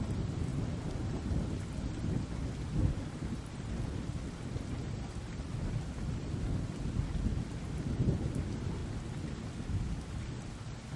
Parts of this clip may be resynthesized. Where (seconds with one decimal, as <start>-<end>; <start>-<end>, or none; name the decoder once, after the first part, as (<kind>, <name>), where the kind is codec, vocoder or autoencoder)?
none